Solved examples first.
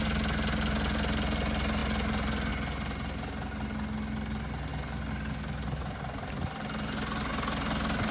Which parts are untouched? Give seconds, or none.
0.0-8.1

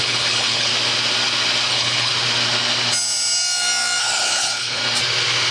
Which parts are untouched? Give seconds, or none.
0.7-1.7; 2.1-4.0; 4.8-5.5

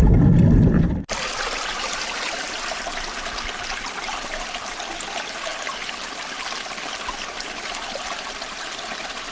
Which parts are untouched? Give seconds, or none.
0.0-9.3